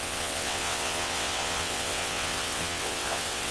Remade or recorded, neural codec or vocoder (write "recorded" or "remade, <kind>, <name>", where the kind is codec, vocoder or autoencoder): remade, vocoder, WaveNeXt